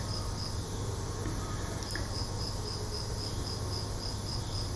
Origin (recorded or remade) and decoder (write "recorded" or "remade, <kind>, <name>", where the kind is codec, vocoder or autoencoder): recorded